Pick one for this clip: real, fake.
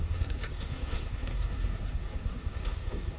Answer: fake